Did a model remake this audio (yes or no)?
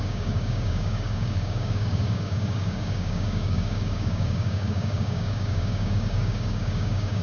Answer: yes